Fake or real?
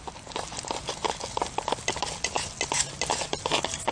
real